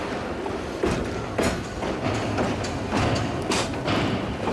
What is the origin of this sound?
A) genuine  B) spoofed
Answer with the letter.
A